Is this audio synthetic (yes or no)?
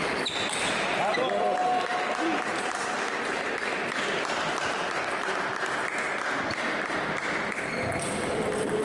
no